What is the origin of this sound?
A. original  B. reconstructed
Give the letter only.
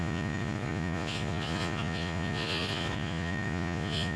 B